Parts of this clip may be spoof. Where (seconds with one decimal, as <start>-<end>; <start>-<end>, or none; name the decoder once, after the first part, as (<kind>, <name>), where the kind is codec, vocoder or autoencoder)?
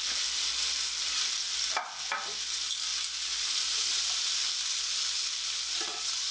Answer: none